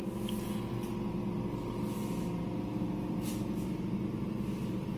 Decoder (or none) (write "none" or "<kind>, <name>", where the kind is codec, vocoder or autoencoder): none